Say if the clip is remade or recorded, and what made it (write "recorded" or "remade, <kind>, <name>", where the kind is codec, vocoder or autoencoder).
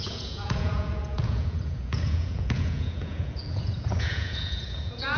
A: remade, vocoder, Vocos